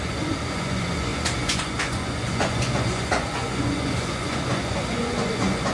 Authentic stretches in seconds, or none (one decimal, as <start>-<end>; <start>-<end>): none